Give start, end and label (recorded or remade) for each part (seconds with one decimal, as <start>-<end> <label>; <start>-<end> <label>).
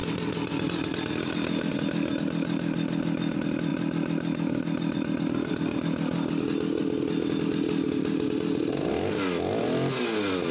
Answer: 0.0-10.5 recorded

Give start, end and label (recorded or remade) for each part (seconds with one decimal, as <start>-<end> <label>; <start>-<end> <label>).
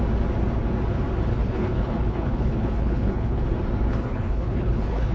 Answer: 0.0-1.3 recorded; 1.3-3.4 remade; 3.4-3.9 recorded; 3.9-5.1 remade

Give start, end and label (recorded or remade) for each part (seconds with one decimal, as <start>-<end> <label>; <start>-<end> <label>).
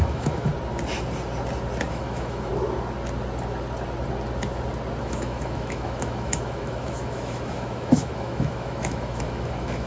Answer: 0.0-0.5 remade; 0.5-1.9 recorded; 1.9-2.5 remade; 2.5-5.0 recorded; 5.0-9.9 remade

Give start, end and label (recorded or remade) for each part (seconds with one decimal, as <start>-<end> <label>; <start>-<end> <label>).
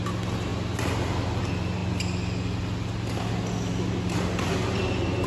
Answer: 0.0-5.3 recorded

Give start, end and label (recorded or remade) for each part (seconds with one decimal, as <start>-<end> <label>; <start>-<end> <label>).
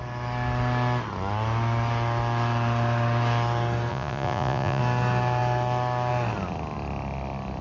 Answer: 0.0-3.9 recorded; 3.9-4.8 remade; 4.8-7.6 recorded